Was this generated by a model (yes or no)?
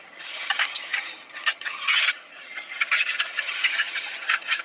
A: yes